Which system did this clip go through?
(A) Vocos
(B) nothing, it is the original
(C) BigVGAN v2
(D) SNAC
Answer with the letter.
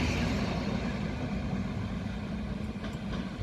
B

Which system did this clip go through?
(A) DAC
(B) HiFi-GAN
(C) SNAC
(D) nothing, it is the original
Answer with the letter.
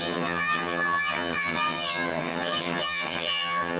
B